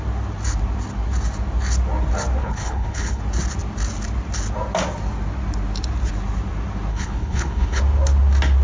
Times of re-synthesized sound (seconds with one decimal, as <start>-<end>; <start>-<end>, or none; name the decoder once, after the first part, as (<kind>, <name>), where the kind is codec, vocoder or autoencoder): 2.4-3.2 (codec, HILCodec); 6.9-7.8